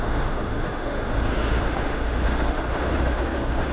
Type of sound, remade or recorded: remade